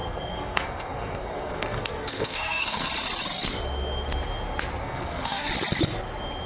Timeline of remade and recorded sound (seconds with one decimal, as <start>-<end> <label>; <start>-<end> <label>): 0.0-2.9 remade; 2.9-4.8 recorded; 4.8-5.5 remade; 5.5-6.5 recorded